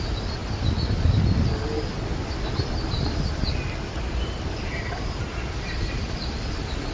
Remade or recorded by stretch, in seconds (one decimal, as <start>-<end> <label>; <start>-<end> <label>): 0.0-6.9 recorded